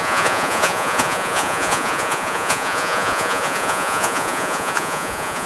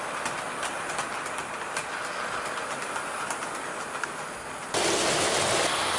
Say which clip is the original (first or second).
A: second